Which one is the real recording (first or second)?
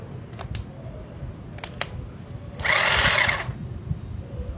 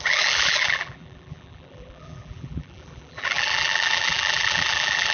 first